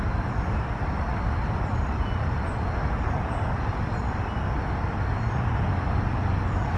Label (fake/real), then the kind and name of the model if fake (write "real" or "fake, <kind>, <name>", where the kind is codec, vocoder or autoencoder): real